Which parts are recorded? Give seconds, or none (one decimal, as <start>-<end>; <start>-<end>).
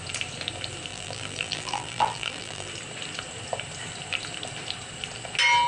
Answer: 0.0-0.9; 2.7-5.7